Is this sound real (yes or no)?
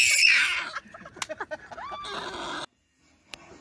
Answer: yes